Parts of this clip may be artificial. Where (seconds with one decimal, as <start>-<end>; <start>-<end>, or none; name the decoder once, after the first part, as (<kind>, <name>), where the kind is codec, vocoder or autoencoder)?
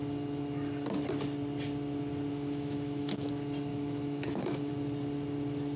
2.3-3.3 (autoencoder, DAC-VAE); 3.7-4.7